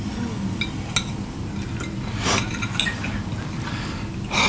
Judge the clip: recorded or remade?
recorded